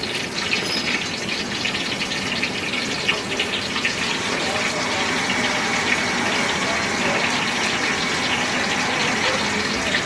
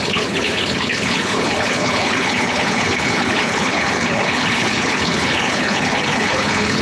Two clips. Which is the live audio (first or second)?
first